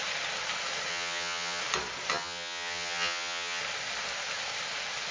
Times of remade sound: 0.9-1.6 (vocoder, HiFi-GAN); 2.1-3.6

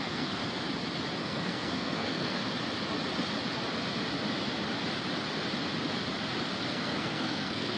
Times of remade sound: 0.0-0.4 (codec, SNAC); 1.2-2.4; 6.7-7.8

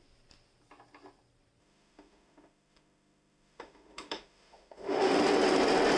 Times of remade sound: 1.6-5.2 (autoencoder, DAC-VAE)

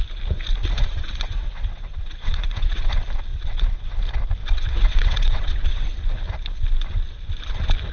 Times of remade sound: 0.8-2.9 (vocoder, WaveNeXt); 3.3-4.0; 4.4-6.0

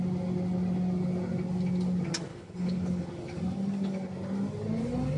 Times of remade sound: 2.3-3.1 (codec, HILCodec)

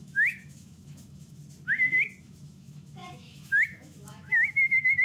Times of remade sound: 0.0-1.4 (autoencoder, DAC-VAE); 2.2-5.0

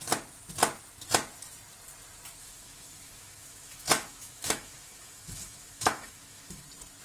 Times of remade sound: 2.4-6.6 (autoencoder, DAC-VAE)

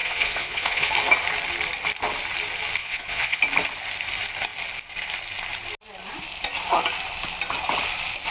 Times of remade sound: 0.0-0.9 (vocoder, Vocos); 2.8-3.4